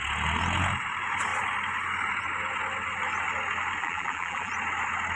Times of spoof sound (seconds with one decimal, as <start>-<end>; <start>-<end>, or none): 3.8-4.5